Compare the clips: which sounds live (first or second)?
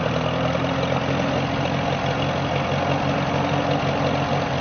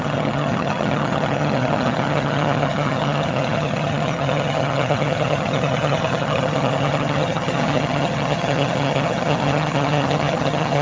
first